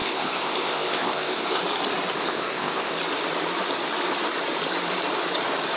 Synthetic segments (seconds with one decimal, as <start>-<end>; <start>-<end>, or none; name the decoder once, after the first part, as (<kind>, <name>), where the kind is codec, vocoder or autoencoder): 0.0-1.6 (codec, ZipCodec); 2.2-2.9